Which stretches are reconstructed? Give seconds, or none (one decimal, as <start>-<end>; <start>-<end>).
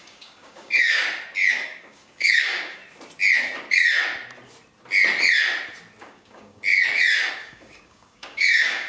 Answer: 0.0-1.0; 1.5-2.8; 6.0-6.7; 7.3-8.9